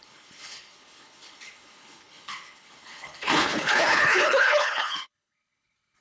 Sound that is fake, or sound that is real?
fake